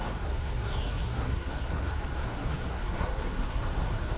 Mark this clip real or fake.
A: fake